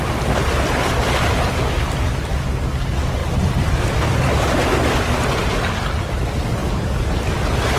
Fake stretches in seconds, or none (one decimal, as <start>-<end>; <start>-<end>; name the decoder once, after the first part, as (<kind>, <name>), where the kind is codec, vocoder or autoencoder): none